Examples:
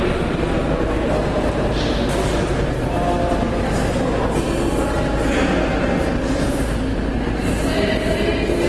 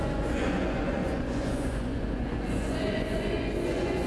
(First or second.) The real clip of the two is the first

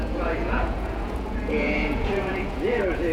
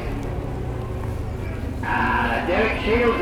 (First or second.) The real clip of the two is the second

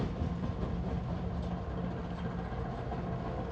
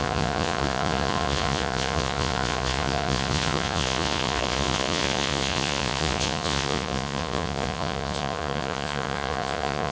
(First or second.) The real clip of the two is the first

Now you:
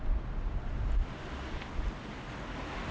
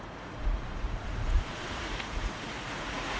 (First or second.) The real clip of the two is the first